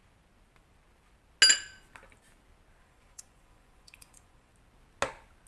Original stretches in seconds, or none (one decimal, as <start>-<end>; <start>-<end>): 0.0-2.8; 4.5-5.5